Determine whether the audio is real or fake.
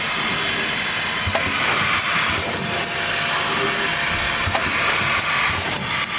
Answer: real